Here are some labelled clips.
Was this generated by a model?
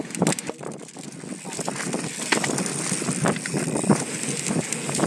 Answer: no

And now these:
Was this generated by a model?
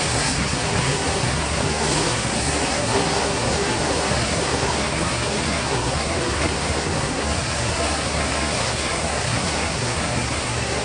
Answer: yes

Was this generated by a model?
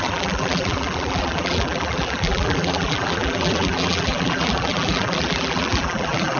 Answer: yes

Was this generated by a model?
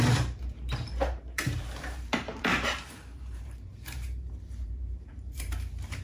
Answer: yes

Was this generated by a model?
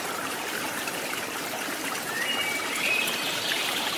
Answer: yes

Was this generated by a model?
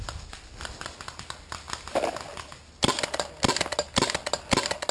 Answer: no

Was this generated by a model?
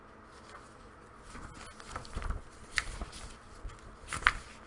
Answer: no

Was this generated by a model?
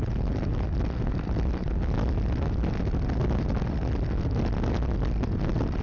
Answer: no